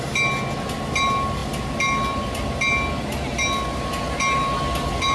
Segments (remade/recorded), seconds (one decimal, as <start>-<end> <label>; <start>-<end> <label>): 0.0-5.1 recorded